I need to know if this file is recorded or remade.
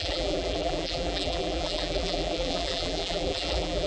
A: remade